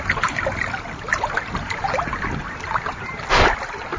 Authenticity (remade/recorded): recorded